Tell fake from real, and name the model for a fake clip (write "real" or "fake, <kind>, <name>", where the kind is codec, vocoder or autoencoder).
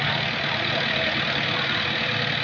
real